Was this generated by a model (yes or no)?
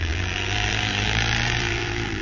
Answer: yes